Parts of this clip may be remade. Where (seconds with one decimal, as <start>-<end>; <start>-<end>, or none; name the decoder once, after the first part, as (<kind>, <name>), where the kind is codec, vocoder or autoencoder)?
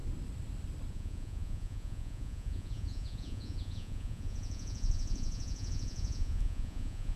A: 0.9-7.2 (vocoder, Vocos)